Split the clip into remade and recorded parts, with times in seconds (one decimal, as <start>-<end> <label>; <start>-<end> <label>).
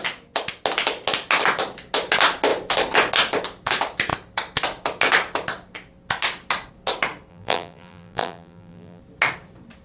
0.0-7.3 recorded; 7.3-9.0 remade; 9.0-9.8 recorded